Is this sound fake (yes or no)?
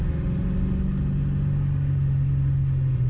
no